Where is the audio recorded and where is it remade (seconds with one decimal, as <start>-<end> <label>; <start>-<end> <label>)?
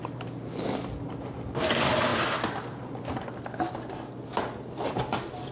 0.0-5.5 recorded